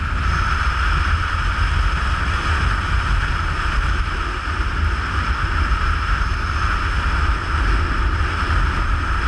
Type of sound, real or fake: real